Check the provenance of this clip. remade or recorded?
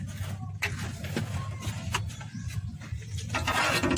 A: recorded